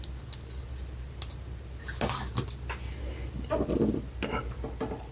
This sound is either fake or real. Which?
real